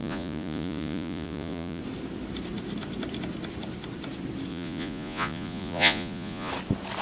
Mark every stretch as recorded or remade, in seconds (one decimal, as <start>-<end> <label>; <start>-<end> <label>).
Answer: 0.0-1.8 remade; 1.8-4.5 recorded; 4.5-6.5 remade; 6.5-7.0 recorded